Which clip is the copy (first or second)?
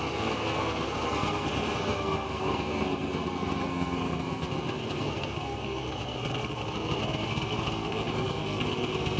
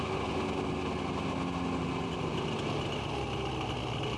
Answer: first